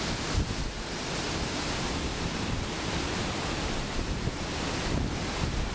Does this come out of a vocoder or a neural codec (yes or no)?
no